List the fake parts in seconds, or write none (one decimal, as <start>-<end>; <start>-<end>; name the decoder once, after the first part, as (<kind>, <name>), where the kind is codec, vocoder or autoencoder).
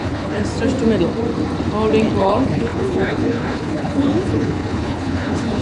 0.0-0.5 (codec, HILCodec); 2.2-5.6